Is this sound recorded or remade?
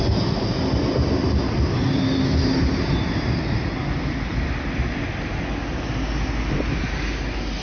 recorded